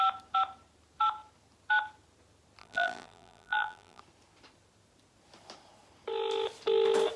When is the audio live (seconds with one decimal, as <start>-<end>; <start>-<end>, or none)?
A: 0.0-2.6; 4.0-7.2